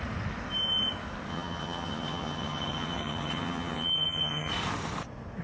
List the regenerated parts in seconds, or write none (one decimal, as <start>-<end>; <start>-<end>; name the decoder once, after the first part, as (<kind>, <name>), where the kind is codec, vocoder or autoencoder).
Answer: 1.3-4.5 (vocoder, HiFi-GAN)